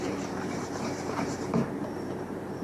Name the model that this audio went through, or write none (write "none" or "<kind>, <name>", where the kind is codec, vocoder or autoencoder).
vocoder, BigVGAN v2